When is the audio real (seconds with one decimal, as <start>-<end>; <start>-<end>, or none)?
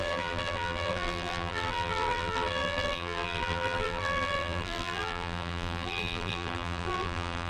none